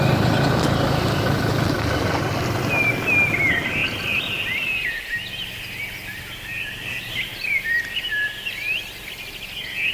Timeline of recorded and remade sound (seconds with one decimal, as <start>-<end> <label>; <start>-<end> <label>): 0.0-9.9 recorded